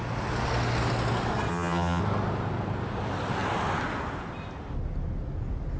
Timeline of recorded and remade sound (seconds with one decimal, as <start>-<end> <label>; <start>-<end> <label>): 0.0-1.5 recorded; 1.5-2.0 remade; 2.0-5.8 recorded